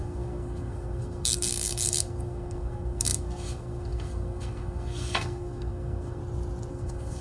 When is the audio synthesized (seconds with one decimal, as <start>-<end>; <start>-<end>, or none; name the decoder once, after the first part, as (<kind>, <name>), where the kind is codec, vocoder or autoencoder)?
0.0-6.2 (codec, SNAC); 6.7-7.2